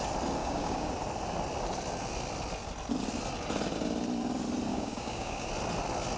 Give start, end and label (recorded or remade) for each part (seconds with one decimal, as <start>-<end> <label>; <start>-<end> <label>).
0.0-0.4 recorded; 0.4-0.9 remade; 0.9-4.7 recorded; 4.7-5.5 remade; 5.5-6.2 recorded